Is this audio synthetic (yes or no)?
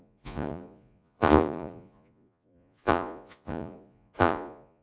yes